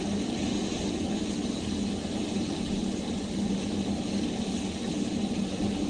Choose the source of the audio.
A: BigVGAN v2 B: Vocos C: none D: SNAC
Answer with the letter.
C